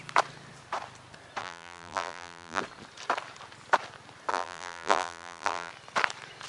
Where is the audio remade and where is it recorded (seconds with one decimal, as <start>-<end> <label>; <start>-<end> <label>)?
0.0-1.4 recorded; 1.4-2.6 remade; 2.6-4.3 recorded; 4.3-5.7 remade; 5.7-6.5 recorded